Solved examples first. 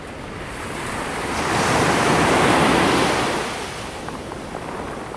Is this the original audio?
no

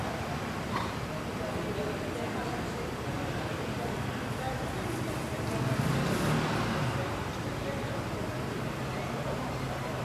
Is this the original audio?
yes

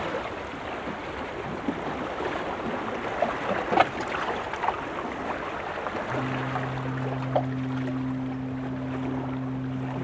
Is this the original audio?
yes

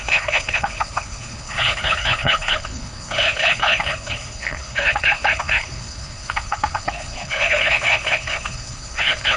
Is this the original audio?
no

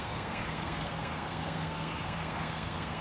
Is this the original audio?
no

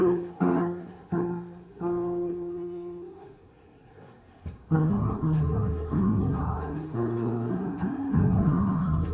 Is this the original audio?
no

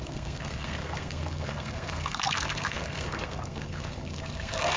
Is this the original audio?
no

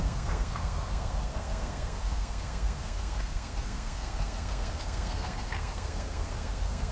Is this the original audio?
no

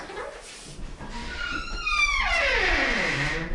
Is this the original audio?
no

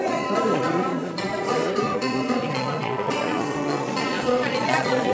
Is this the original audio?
no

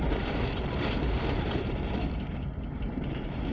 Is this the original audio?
no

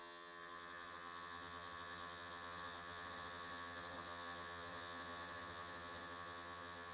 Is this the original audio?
no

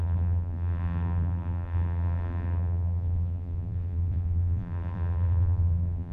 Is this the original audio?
no